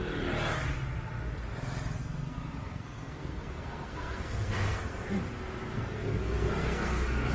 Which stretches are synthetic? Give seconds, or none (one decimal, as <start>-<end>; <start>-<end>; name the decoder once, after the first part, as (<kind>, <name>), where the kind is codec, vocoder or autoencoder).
2.0-5.2 (codec, SNAC); 5.7-7.3